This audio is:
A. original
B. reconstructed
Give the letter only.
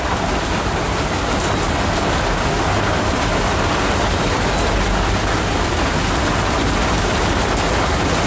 A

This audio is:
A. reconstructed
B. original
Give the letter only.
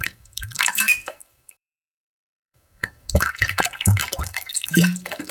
A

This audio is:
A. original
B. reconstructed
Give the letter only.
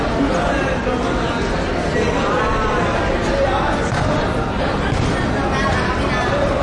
A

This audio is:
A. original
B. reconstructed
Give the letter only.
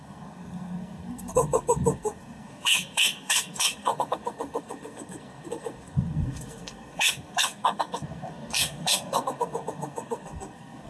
B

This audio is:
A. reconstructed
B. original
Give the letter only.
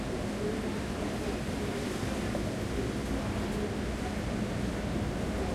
B